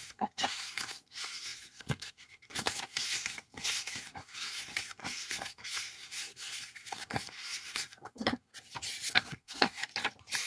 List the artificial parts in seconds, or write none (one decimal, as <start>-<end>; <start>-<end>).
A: 0.0-8.5; 9.1-9.8